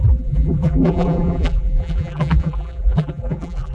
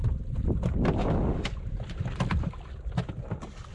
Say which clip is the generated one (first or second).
first